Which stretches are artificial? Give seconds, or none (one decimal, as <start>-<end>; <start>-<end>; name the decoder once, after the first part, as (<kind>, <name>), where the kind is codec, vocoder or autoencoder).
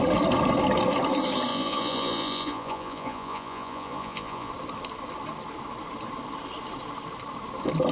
1.5-4.5 (vocoder, Vocos)